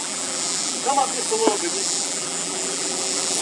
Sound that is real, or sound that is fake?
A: fake